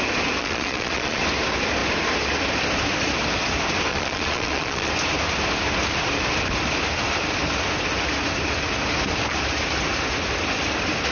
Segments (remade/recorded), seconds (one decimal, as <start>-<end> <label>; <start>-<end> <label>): 0.0-0.4 recorded; 0.4-1.2 remade; 1.2-3.9 recorded; 3.9-4.9 remade; 4.9-11.1 recorded